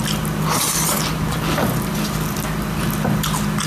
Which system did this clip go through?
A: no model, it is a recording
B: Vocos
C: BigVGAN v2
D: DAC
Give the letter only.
A